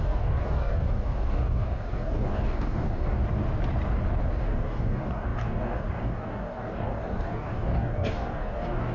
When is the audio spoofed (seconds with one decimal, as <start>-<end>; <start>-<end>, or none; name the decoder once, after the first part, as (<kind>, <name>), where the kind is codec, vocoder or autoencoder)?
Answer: 0.0-3.2 (codec, DAC); 4.3-8.9